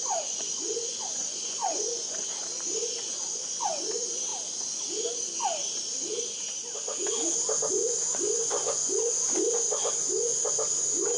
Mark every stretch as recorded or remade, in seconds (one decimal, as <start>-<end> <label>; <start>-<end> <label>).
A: 0.0-4.3 remade; 4.3-6.2 recorded; 6.2-6.9 remade; 6.9-7.7 recorded; 7.7-10.3 remade; 10.3-11.2 recorded